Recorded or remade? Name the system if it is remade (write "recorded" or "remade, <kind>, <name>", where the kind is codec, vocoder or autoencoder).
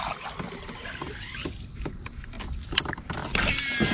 recorded